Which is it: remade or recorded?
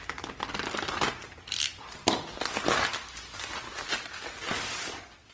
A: recorded